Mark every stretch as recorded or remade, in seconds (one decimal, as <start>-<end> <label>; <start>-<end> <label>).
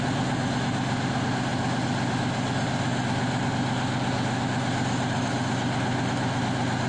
0.0-6.9 recorded